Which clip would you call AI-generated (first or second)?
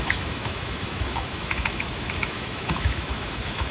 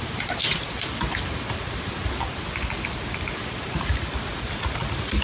first